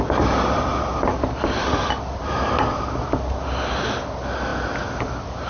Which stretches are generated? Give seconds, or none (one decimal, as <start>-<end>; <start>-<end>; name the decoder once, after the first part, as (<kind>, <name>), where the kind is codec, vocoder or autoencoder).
none